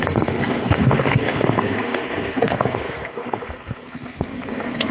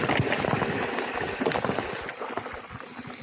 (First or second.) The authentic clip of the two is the second